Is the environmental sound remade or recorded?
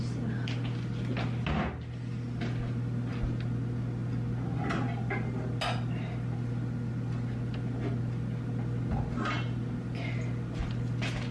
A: recorded